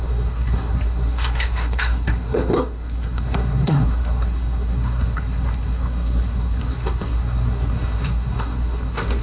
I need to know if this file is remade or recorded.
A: remade